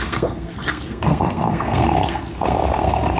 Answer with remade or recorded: remade